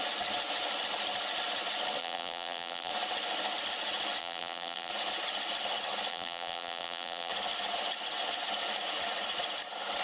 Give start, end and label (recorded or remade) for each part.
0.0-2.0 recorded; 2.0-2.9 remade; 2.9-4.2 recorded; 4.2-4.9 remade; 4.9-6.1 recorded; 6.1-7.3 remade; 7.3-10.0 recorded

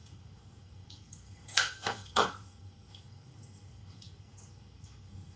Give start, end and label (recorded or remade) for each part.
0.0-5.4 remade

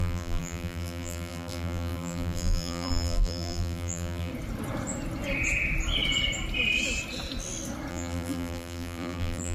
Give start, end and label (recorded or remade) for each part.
0.0-4.3 remade; 4.3-7.9 recorded; 7.9-9.5 remade

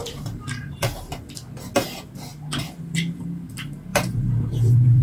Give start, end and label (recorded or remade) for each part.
0.0-1.2 remade; 1.2-3.9 recorded; 3.9-5.0 remade

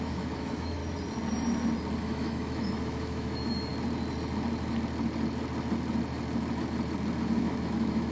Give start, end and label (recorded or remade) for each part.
0.0-0.8 remade; 0.8-2.0 recorded; 2.0-3.7 remade; 3.7-7.4 recorded; 7.4-8.1 remade